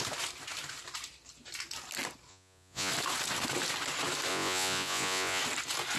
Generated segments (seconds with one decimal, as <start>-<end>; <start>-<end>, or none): 2.3-2.9; 4.3-5.4